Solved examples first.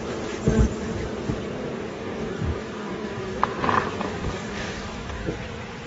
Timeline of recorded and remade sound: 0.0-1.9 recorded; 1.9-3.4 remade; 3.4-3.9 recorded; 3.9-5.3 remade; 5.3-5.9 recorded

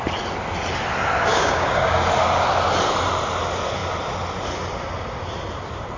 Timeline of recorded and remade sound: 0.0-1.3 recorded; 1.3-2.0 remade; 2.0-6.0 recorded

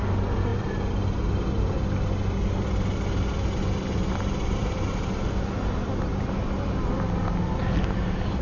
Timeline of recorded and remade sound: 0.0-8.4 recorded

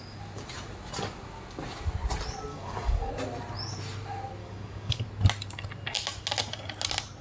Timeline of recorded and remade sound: 0.0-2.5 recorded; 2.5-3.1 remade; 3.1-4.4 recorded; 4.4-5.0 remade; 5.0-7.2 recorded

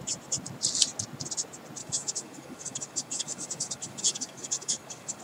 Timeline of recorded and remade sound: 0.0-1.8 recorded; 1.8-5.2 remade

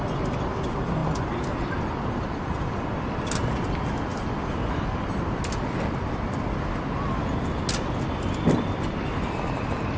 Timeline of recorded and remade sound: 0.0-10.0 recorded

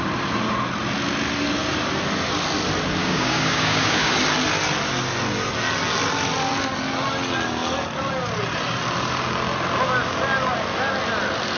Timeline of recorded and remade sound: 0.0-3.0 recorded; 3.0-4.1 remade; 4.1-11.6 recorded

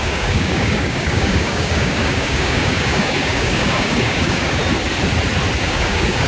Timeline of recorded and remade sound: 0.0-4.6 remade; 4.6-5.6 recorded; 5.6-6.3 remade